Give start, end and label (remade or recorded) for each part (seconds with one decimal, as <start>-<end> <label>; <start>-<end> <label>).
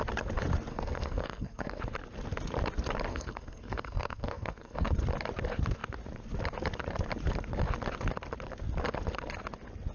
0.0-0.7 recorded; 0.7-1.8 remade; 1.8-3.1 recorded; 3.1-4.9 remade; 4.9-9.9 recorded